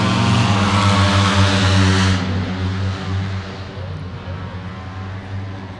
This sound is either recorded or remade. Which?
recorded